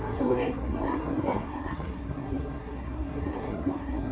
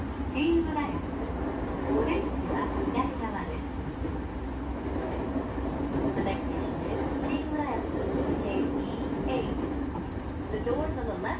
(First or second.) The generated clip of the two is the first